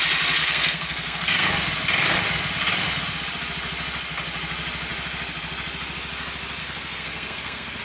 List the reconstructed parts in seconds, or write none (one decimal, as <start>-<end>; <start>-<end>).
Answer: 0.4-1.5; 6.6-7.8